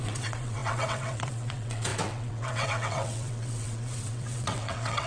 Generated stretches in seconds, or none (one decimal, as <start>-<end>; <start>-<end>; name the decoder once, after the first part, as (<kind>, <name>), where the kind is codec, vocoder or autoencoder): 0.0-5.1 (vocoder, WaveNeXt)